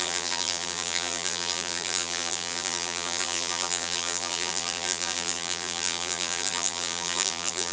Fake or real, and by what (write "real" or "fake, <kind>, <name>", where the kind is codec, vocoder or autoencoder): fake, vocoder, BigVGAN v2